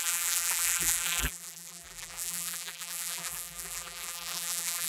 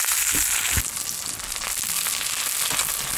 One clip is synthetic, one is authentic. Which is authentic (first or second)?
second